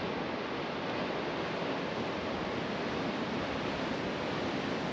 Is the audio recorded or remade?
recorded